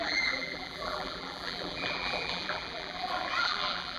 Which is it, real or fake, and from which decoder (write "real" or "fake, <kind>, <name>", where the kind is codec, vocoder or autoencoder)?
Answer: fake, vocoder, BigVGAN v2